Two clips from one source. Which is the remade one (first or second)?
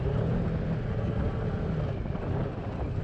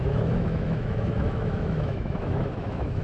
second